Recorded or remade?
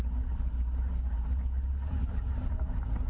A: recorded